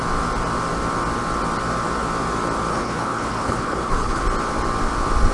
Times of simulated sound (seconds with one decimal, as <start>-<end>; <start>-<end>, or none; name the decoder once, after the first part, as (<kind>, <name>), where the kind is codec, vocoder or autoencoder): 2.7-4.2 (codec, HILCodec)